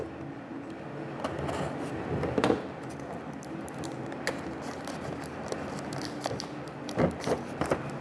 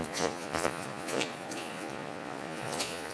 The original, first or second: first